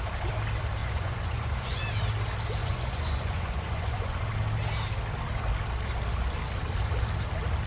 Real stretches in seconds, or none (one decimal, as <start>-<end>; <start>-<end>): 0.0-0.8; 1.8-2.6; 4.2-7.7